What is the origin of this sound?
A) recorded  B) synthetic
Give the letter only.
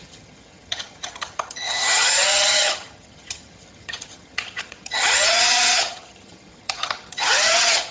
B